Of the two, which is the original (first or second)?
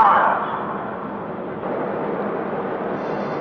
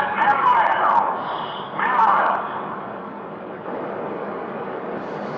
first